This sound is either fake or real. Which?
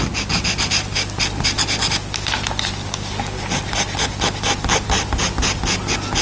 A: real